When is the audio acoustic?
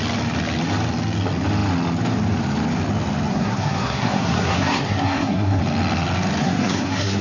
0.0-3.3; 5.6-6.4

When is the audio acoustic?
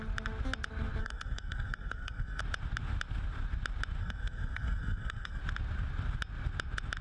0.0-1.0; 2.4-4.0; 5.4-7.0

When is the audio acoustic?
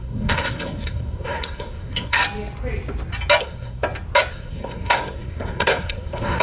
2.2-3.4; 3.8-4.3